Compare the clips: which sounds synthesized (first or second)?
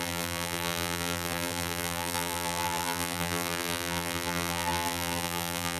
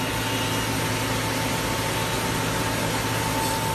first